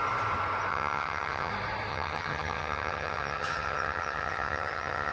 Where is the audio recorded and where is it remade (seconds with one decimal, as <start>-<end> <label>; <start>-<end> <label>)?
0.0-0.7 recorded; 0.7-1.5 remade; 1.5-1.9 recorded; 1.9-5.1 remade